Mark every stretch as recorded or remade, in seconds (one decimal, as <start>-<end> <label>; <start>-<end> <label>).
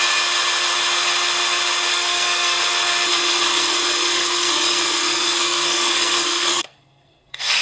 0.0-1.9 recorded; 1.9-2.6 remade; 2.6-3.1 recorded; 3.1-7.6 remade